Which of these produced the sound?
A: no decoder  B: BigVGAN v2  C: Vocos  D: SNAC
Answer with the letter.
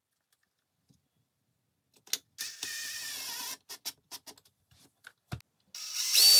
A